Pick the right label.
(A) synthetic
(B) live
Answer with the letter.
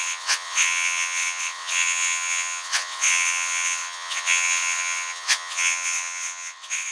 A